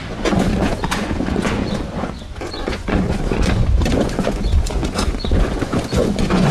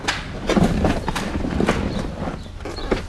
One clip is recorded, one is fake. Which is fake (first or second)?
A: first